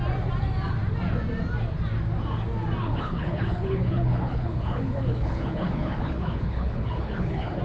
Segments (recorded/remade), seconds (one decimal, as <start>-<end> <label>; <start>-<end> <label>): 0.0-2.8 recorded; 2.8-7.6 remade